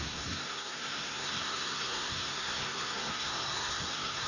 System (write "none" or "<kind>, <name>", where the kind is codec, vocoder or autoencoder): codec, SNAC